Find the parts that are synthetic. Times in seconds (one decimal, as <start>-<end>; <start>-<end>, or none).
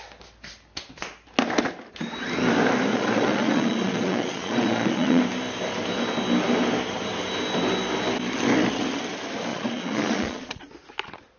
2.9-5.2; 9.5-10.7